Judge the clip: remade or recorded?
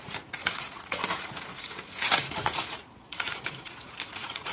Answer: remade